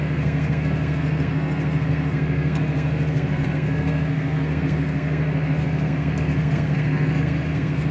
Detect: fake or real fake